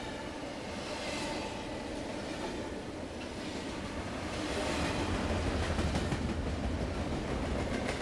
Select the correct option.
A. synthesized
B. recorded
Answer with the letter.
B